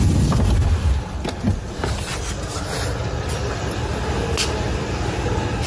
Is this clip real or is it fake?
real